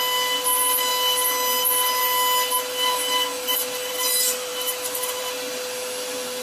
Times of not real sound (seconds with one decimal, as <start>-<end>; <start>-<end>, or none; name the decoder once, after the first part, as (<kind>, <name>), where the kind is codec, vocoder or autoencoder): none